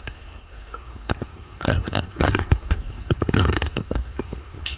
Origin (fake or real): fake